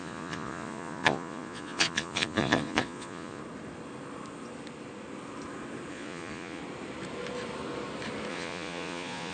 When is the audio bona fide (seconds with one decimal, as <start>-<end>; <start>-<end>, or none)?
3.4-5.9; 6.6-8.3